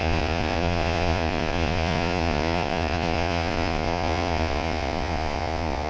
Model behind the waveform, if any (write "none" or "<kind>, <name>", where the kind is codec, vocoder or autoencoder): vocoder, Vocos